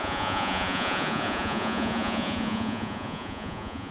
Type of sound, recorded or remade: remade